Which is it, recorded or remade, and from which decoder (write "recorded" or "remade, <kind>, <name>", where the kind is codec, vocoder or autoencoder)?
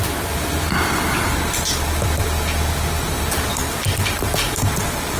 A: recorded